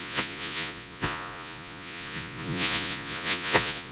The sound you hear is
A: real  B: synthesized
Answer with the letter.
B